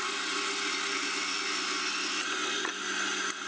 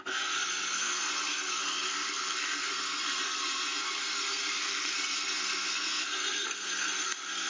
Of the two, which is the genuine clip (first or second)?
first